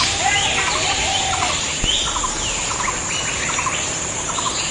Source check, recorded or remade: recorded